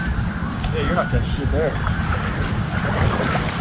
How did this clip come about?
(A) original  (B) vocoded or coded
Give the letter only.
A